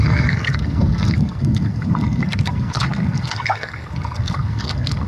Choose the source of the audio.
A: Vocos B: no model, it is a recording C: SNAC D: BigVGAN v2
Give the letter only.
C